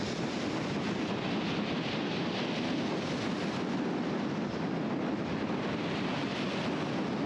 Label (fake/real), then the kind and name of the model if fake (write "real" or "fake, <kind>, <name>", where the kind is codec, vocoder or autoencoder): real